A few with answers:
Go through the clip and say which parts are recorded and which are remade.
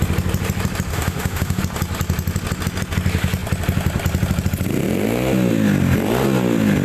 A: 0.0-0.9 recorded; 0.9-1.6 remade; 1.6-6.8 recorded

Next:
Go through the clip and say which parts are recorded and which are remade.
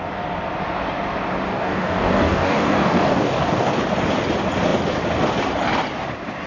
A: 0.0-1.5 recorded; 1.5-3.8 remade; 3.8-6.5 recorded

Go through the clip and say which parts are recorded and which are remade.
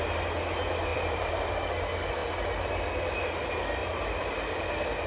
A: 0.0-0.9 recorded; 0.9-1.5 remade; 1.5-5.1 recorded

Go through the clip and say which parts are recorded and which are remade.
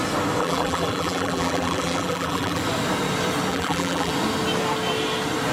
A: 0.0-0.4 recorded; 0.4-2.6 remade; 2.6-3.5 recorded; 3.5-4.1 remade; 4.1-5.5 recorded